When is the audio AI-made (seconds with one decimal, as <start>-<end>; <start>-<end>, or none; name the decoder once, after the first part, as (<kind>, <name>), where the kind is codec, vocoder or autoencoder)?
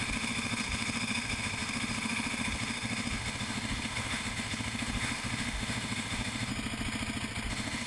0.0-6.5 (autoencoder, DAC-VAE); 7.5-7.9